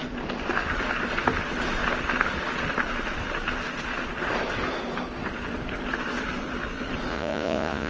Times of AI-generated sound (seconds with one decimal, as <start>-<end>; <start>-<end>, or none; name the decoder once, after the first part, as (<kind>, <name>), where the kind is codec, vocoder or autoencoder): 7.1-7.9 (vocoder, Vocos)